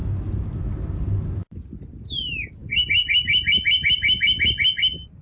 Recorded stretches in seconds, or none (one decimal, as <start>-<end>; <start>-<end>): 0.0-5.2